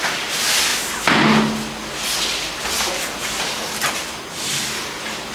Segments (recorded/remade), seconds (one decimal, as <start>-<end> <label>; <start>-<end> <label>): 0.0-5.3 recorded